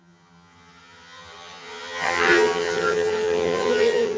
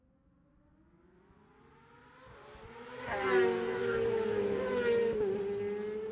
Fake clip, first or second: first